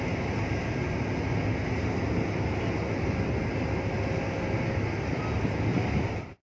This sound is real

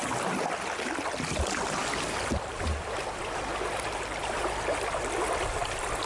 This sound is real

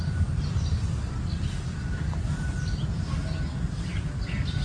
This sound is real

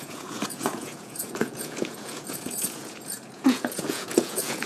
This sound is fake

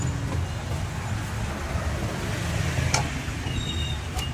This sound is real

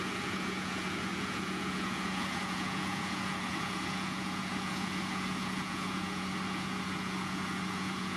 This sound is fake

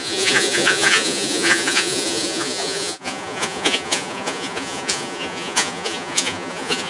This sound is fake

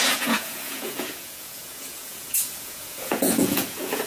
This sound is fake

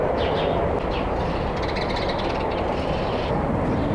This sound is real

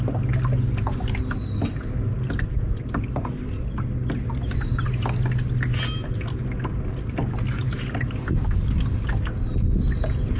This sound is real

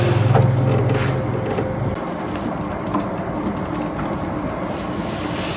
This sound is real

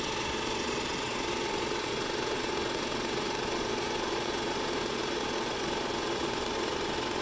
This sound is fake